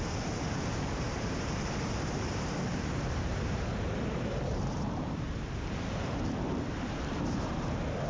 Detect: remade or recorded remade